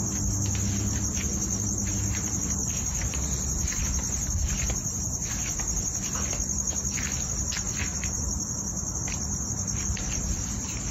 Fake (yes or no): no